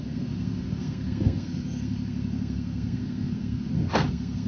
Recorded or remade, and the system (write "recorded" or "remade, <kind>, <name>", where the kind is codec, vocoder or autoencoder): remade, codec, SNAC